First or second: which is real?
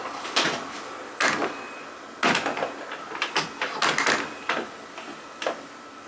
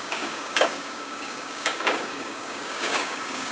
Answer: first